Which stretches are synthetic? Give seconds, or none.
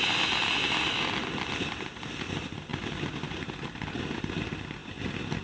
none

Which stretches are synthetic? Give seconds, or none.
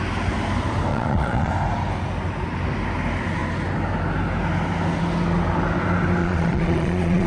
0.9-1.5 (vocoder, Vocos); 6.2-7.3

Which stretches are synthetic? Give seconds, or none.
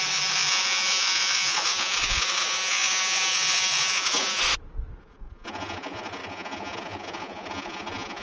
0.0-4.4 (vocoder, Vocos); 5.0-8.2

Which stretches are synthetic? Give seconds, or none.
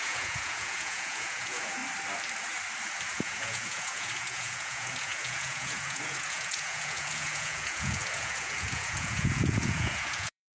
0.0-1.8 (vocoder, Vocos); 3.1-10.6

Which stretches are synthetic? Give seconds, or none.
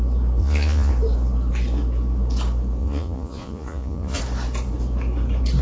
0.4-0.9 (vocoder, Vocos); 2.8-4.2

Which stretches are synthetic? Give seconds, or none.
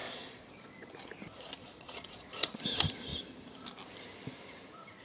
0.0-0.9 (vocoder, Vocos); 1.6-2.6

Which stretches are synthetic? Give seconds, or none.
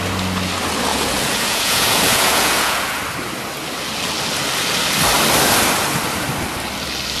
0.9-3.0 (vocoder, Vocos)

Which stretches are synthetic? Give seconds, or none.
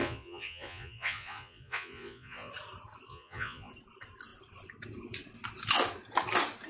0.0-2.5 (vocoder, Vocos); 3.1-3.7